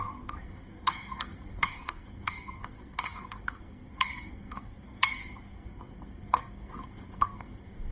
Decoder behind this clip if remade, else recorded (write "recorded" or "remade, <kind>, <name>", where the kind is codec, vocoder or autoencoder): remade, codec, SNAC